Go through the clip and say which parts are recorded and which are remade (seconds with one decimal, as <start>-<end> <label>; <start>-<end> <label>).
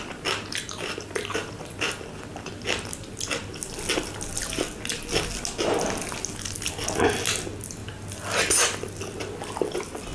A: 0.0-10.1 recorded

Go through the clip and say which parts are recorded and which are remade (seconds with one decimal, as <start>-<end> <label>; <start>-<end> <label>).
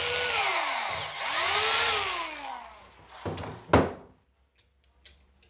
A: 0.0-5.5 recorded